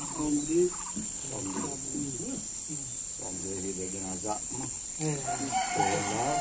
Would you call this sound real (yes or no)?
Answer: yes